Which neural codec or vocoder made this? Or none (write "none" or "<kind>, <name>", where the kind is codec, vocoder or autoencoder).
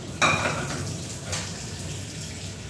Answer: none